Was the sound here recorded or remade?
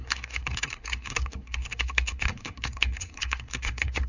remade